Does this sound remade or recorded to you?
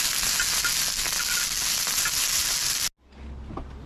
recorded